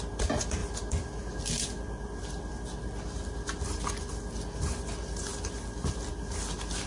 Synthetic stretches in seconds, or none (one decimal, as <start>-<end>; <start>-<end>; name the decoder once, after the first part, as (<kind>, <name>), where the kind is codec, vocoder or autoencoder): none